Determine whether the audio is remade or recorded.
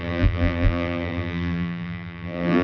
remade